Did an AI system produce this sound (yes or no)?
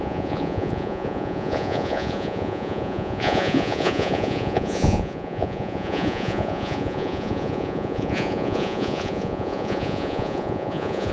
yes